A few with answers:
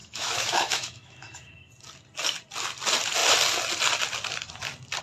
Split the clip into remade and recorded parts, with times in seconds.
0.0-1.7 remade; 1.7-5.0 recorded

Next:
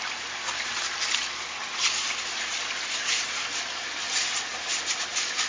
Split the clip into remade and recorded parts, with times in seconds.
0.0-5.5 recorded

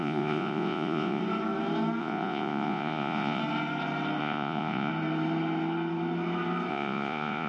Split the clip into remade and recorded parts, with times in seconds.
0.0-1.2 remade; 1.2-2.0 recorded; 2.0-3.4 remade; 3.4-4.2 recorded; 4.2-4.9 remade; 4.9-6.7 recorded; 6.7-7.5 remade